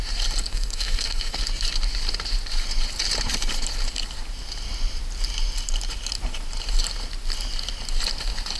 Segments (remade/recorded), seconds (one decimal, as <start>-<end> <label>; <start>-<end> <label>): 0.0-0.5 recorded; 0.5-1.4 remade; 1.4-8.6 recorded